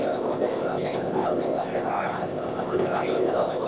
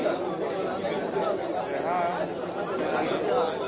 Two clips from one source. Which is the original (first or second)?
second